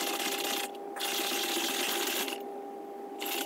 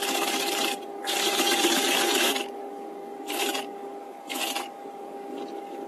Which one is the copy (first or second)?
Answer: second